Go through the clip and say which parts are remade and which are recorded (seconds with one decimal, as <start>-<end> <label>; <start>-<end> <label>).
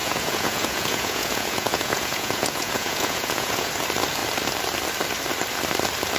0.0-3.7 remade; 3.7-6.2 recorded